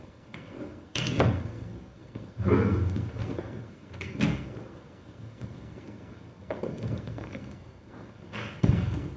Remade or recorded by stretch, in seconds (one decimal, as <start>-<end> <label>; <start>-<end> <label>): 0.0-9.2 remade